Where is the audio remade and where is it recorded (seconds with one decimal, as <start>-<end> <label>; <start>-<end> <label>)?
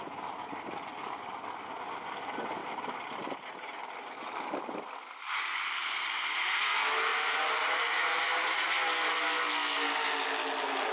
0.0-2.6 recorded; 2.6-4.0 remade; 4.0-5.8 recorded; 5.8-6.6 remade; 6.6-7.1 recorded; 7.1-8.7 remade; 8.7-10.9 recorded